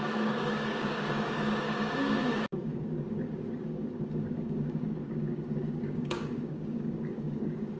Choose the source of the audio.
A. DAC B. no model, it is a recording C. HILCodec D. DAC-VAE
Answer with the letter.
A